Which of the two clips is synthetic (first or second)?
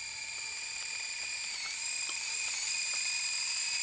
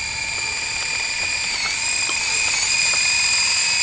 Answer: first